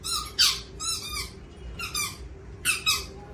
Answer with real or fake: fake